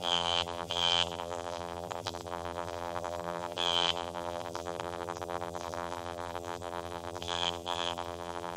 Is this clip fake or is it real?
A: fake